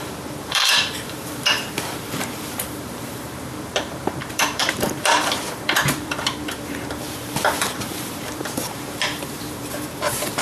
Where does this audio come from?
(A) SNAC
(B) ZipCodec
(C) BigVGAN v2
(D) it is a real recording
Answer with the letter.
C